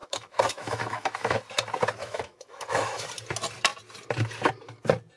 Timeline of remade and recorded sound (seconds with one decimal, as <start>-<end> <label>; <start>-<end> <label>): 0.0-1.4 remade; 1.4-2.0 recorded; 2.0-3.1 remade; 3.1-5.2 recorded